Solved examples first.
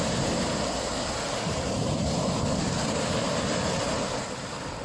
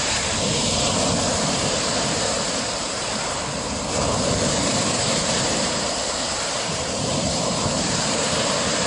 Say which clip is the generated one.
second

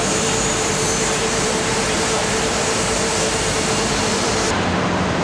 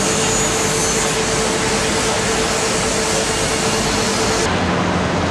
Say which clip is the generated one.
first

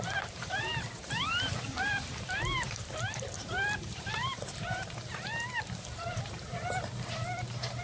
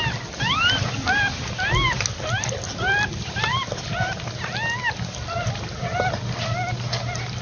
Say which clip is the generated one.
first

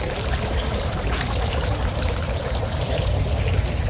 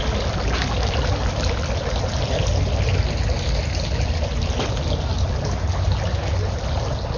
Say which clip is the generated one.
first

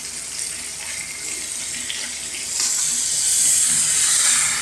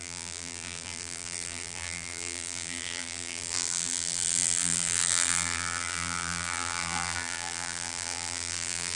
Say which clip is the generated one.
second